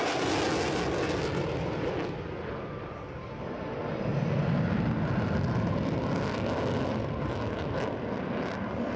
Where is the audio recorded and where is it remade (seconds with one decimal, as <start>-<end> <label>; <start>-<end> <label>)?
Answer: 0.0-9.0 recorded